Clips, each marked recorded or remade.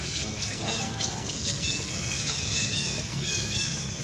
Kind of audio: remade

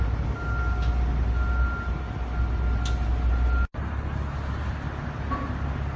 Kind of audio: recorded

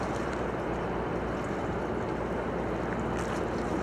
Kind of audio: recorded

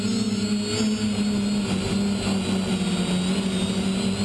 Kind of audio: recorded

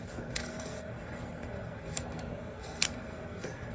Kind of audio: remade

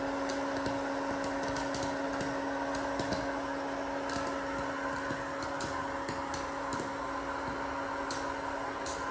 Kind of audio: recorded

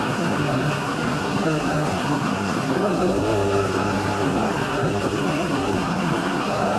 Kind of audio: remade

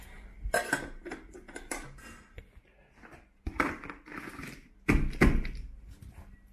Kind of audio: recorded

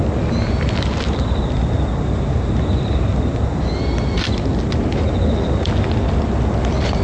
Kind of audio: recorded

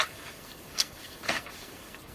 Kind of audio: remade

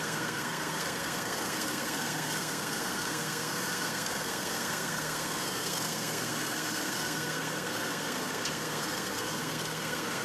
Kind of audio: remade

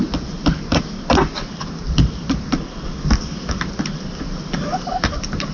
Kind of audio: recorded